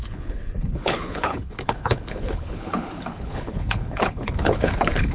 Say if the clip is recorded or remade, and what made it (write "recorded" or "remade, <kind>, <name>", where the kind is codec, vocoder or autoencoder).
remade, codec, HILCodec